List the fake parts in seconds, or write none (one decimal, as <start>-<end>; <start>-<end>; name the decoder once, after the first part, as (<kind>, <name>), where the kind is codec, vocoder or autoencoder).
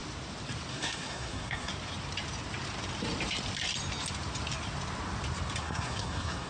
0.7-1.7 (codec, SNAC); 5.6-6.5